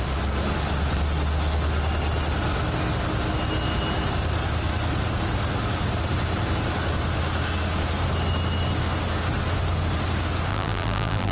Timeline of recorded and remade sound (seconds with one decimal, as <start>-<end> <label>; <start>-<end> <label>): 0.0-10.5 recorded; 10.5-11.3 remade